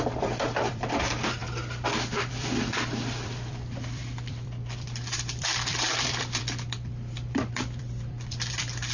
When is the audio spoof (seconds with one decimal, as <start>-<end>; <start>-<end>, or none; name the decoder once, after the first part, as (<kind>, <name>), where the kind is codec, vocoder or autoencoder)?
0.0-1.4 (vocoder, BigVGAN v2); 2.3-8.9